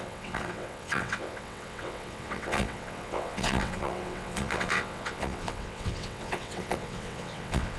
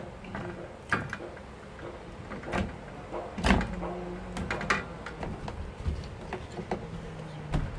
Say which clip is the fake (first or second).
first